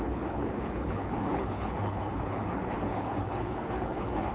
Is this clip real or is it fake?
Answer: fake